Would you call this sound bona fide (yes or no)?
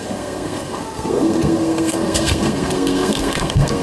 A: no